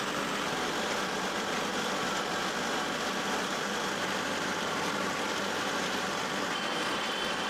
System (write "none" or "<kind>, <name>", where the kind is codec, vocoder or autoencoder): vocoder, BigVGAN v2